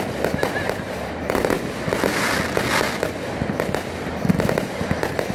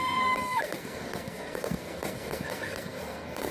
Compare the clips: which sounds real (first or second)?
first